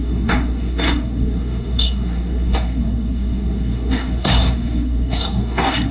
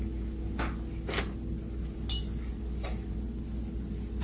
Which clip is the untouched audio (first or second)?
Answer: second